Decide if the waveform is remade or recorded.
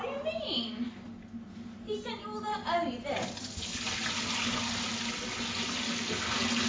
recorded